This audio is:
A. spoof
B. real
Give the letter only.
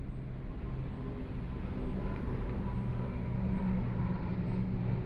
B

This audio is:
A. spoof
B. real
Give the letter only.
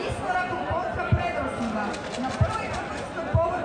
B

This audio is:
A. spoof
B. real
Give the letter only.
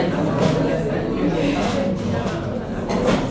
B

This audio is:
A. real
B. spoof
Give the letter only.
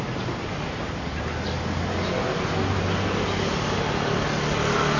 A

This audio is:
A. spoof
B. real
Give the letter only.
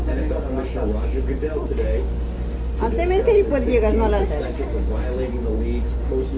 B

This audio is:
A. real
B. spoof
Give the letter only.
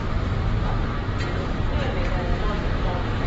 A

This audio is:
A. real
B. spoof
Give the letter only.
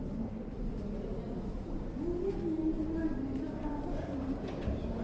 A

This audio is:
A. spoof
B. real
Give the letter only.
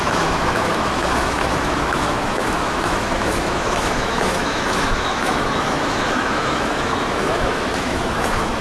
A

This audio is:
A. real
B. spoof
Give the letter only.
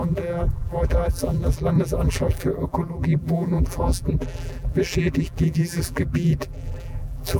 B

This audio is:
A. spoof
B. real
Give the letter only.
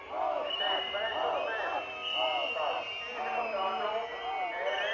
B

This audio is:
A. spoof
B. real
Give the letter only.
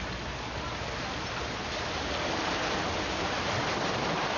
B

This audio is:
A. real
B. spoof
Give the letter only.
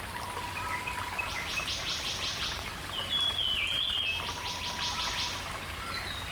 A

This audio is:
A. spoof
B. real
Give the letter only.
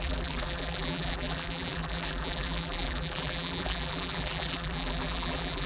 A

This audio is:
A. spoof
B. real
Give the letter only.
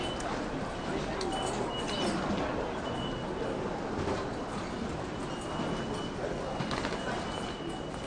B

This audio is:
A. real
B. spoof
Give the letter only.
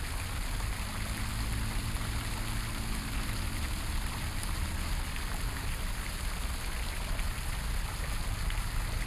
A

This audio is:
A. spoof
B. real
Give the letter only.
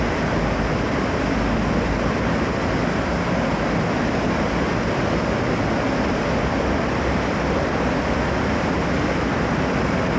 B